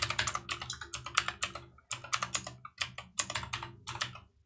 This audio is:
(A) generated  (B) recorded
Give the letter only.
B